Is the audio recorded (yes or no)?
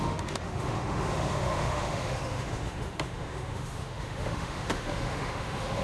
no